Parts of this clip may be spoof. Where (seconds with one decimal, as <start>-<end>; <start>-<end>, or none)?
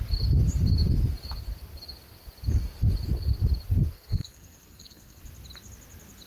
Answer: 3.9-5.2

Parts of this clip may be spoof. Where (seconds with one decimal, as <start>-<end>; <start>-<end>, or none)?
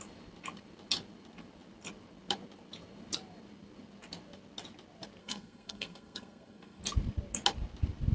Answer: 5.2-6.8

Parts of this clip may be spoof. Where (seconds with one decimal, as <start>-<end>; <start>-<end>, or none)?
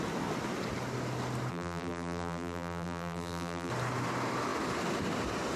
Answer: 1.5-3.7